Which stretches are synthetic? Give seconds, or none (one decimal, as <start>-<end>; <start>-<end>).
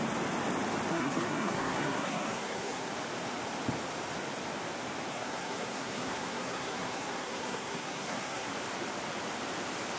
0.9-2.9; 5.1-8.5